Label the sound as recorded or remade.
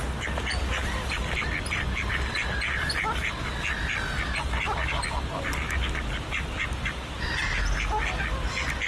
recorded